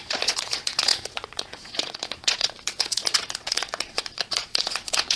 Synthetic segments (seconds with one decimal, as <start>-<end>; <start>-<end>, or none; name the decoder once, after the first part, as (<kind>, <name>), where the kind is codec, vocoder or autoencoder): 0.0-5.2 (vocoder, Vocos)